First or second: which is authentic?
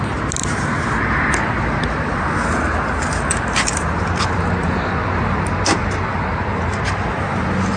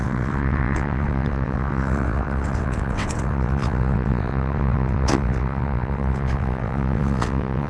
first